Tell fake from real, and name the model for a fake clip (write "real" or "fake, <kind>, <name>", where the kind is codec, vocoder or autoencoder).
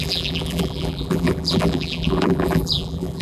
fake, vocoder, BigVGAN v2